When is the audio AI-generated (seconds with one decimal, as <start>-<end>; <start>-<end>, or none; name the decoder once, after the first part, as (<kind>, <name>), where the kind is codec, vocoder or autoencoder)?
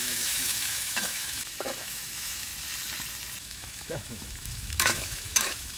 0.0-2.5 (autoencoder, DAC-VAE); 3.4-5.8